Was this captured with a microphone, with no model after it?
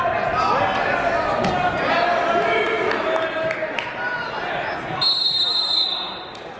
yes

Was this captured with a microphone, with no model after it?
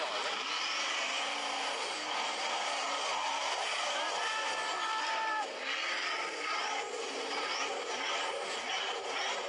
yes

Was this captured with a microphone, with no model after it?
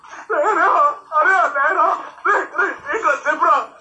yes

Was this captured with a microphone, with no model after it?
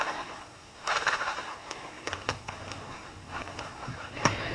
no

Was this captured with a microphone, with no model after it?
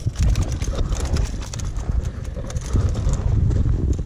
no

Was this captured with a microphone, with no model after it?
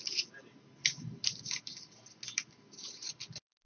yes